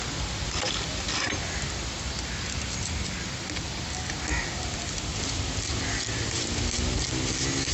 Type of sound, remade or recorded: recorded